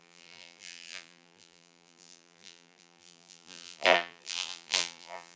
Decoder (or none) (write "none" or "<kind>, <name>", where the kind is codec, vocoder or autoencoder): vocoder, BigVGAN v2